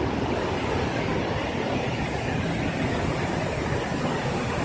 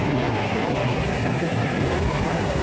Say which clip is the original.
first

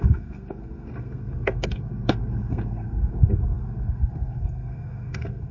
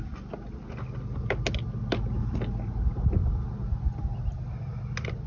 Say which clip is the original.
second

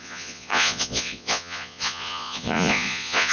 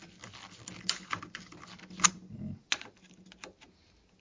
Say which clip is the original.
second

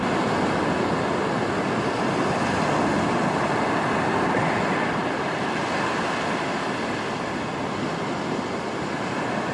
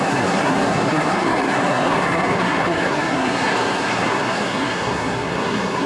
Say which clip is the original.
first